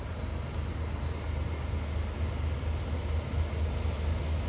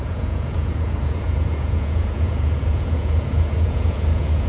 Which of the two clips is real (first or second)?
first